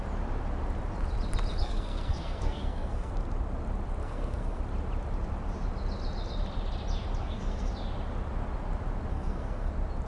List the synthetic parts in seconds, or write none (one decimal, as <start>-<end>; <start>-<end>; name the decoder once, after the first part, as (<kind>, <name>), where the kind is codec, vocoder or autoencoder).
1.6-3.1 (codec, SNAC); 4.0-4.6; 7.2-7.7; 9.1-9.7